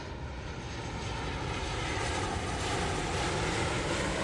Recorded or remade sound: recorded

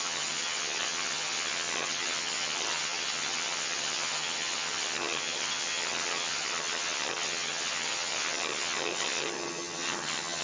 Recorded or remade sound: remade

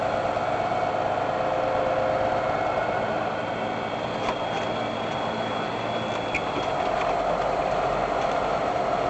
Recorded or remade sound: recorded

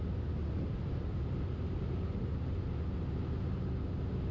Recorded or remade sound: recorded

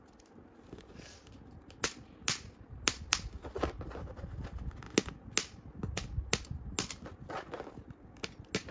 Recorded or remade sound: recorded